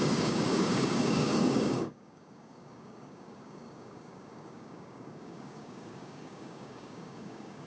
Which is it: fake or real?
fake